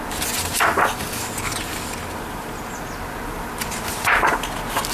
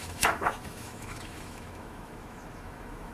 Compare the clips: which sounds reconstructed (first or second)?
second